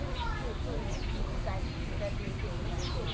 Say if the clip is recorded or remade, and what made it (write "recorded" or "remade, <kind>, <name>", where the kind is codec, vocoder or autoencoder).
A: recorded